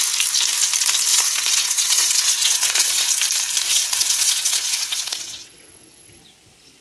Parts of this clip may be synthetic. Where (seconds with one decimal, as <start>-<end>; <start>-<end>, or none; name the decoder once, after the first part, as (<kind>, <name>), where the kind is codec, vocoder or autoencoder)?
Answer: 1.1-3.1 (vocoder, WaveNeXt); 3.7-6.2